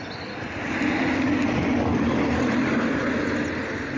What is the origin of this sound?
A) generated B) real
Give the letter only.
B